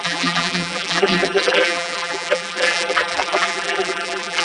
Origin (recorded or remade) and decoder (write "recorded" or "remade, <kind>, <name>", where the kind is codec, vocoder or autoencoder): remade, vocoder, BigVGAN v2